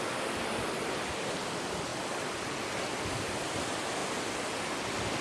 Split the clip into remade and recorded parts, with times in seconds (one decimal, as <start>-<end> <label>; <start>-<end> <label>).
0.0-5.2 recorded